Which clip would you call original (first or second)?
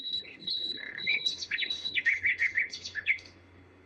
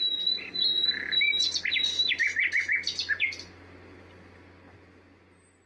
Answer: second